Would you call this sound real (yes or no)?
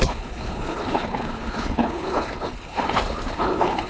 no